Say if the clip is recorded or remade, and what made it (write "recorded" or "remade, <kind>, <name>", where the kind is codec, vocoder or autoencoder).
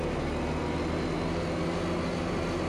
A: recorded